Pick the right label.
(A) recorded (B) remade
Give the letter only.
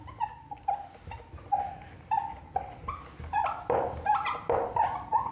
A